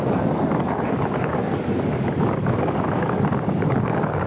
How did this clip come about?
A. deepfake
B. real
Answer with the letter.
A